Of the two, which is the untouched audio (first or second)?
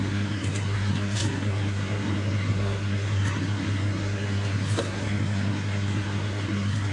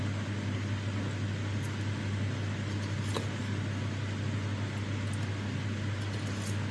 second